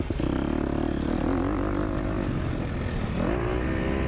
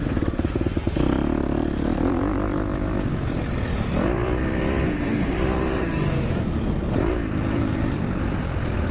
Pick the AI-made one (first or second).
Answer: second